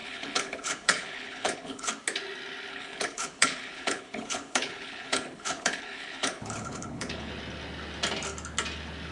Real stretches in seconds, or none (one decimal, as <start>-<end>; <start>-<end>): 1.9-2.7; 7.3-9.1